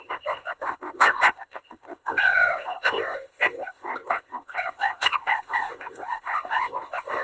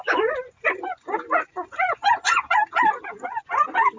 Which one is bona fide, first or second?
second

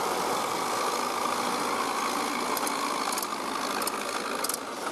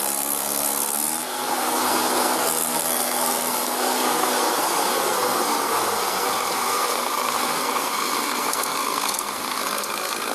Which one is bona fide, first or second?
first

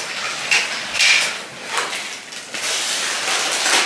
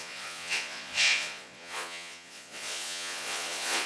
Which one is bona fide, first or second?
first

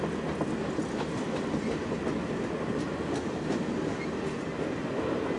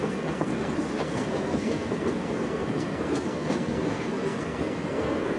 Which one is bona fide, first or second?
first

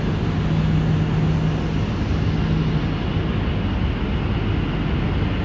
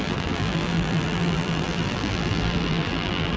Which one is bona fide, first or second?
first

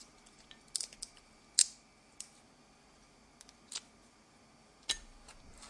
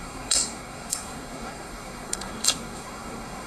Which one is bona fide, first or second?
first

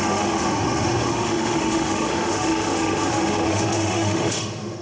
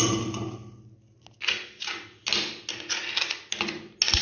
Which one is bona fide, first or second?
second